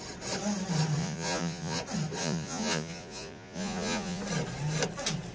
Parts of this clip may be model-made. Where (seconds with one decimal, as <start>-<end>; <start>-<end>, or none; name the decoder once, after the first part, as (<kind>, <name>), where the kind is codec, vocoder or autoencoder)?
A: 1.0-1.8 (vocoder, Vocos); 2.2-4.2